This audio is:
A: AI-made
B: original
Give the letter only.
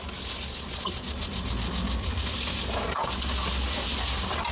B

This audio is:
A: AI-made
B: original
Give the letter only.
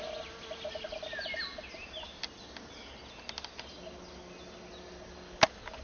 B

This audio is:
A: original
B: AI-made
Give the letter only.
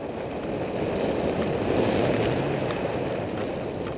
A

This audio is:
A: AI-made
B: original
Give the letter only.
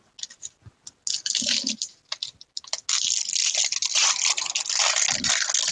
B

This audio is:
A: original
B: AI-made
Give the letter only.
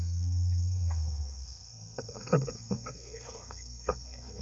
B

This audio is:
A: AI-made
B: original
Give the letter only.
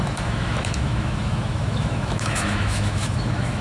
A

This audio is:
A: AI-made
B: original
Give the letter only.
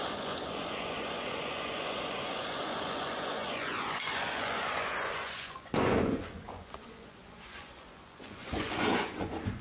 A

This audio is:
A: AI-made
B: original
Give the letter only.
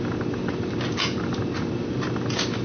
B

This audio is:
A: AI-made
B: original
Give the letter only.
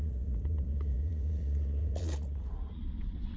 A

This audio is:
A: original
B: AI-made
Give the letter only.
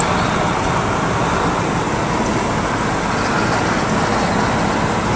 A